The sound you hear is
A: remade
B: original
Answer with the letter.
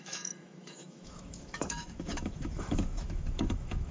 A